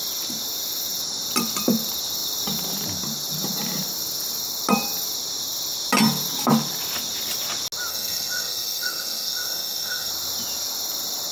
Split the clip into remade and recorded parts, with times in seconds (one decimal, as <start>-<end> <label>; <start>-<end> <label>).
0.0-7.9 recorded; 7.9-10.1 remade; 10.1-11.3 recorded